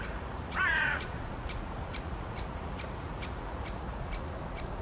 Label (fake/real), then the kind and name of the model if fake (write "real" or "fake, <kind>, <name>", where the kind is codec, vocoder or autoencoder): fake, vocoder, Vocos